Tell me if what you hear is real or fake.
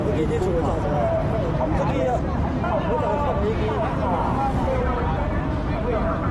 real